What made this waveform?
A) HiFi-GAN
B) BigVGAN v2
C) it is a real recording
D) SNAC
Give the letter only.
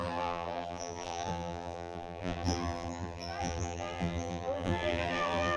B